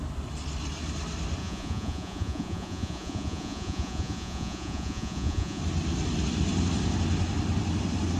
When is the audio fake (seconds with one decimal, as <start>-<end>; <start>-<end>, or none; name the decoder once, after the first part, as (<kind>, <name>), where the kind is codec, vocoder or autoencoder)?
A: 1.4-5.6 (vocoder, Vocos)